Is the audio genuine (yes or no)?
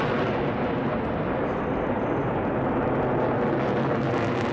yes